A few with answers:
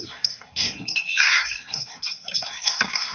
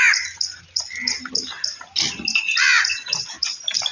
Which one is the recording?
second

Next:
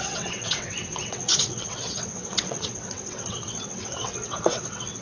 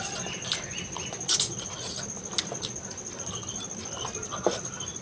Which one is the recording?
second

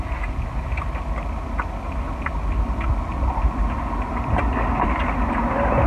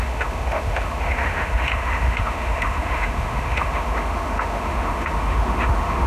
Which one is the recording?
first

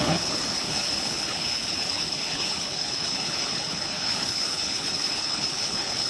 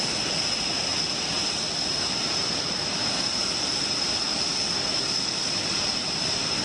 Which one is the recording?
second